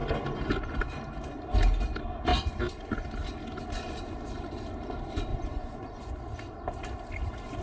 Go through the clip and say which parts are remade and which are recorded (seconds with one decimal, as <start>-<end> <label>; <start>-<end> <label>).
0.0-5.3 recorded; 5.3-6.1 remade; 6.1-7.6 recorded